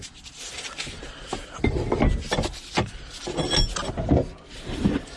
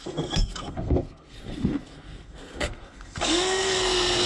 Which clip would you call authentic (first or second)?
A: first